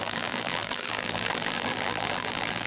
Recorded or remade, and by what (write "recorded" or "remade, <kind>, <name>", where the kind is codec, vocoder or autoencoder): remade, vocoder, BigVGAN v2